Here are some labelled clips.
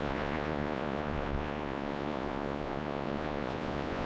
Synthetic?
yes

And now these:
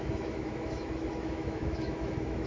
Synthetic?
yes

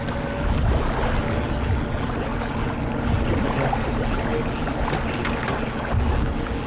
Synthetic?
no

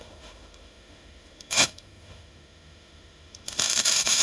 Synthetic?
yes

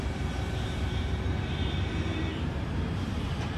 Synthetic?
yes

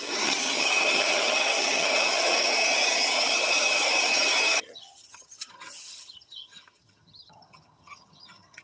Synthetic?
yes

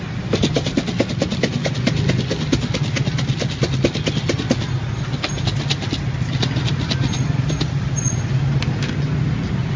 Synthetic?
no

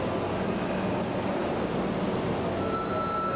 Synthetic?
no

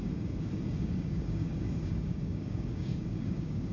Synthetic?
yes